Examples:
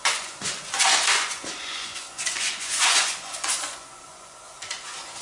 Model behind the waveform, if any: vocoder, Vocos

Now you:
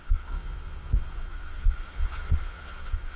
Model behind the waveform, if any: vocoder, Vocos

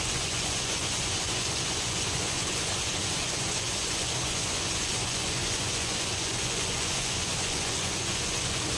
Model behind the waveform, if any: vocoder, Vocos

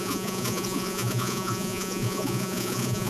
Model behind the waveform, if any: vocoder, Vocos